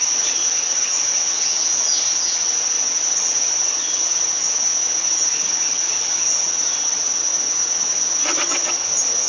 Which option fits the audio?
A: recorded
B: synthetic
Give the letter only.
B